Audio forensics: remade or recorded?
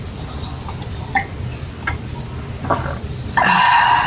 recorded